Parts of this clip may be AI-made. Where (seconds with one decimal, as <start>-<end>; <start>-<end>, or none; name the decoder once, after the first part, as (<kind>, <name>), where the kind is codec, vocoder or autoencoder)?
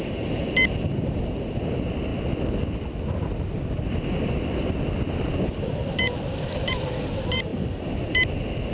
7.5-8.7 (vocoder, BigVGAN v2)